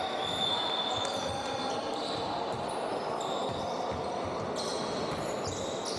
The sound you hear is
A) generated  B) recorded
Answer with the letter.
B